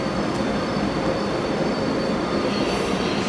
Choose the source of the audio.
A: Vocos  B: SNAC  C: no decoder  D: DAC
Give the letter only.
C